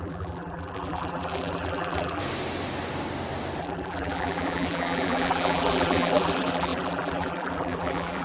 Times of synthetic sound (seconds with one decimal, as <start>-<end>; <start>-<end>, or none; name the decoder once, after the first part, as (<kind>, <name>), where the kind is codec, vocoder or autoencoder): 0.0-2.2 (vocoder, BigVGAN v2); 3.6-8.2